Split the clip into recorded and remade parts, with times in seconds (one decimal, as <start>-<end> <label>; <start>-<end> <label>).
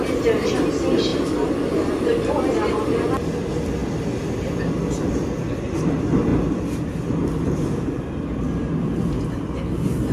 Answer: 0.0-3.8 recorded; 3.8-4.8 remade; 4.8-6.3 recorded; 6.3-8.3 remade; 8.3-10.1 recorded